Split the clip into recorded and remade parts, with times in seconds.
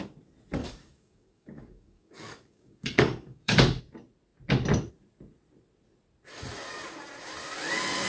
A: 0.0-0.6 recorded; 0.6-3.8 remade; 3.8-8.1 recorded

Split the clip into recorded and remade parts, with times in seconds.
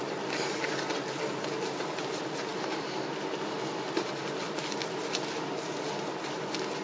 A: 0.0-6.8 recorded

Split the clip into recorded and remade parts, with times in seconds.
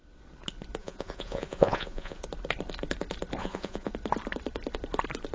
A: 0.0-0.8 recorded; 0.8-2.2 remade; 2.2-3.4 recorded; 3.4-3.9 remade; 3.9-5.3 recorded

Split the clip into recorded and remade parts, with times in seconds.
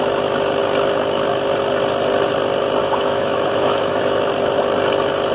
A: 0.0-2.8 recorded; 2.8-4.3 remade; 4.3-5.3 recorded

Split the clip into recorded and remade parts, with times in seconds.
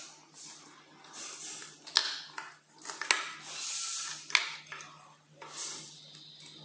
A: 0.0-6.6 recorded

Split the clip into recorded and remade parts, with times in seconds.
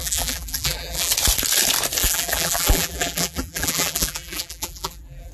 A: 0.0-1.1 remade; 1.1-2.0 recorded; 2.0-5.3 remade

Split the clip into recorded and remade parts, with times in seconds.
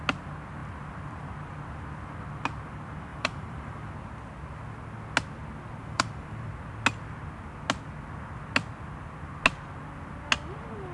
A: 0.0-3.1 recorded; 3.1-3.9 remade; 3.9-5.8 recorded; 5.8-6.5 remade; 6.5-10.9 recorded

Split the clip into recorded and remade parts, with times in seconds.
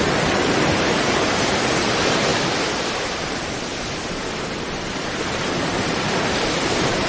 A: 0.0-2.3 remade; 2.3-3.2 recorded; 3.2-3.7 remade; 3.7-4.6 recorded; 4.6-7.1 remade